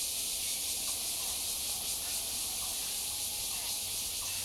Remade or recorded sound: recorded